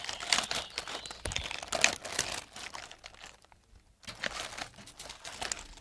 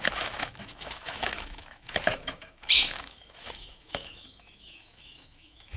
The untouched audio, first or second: first